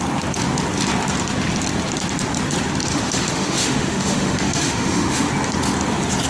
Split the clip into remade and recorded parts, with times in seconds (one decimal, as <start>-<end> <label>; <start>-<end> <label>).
0.0-2.9 recorded; 2.9-5.3 remade; 5.3-6.3 recorded